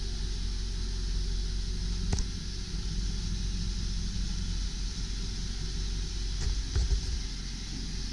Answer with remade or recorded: recorded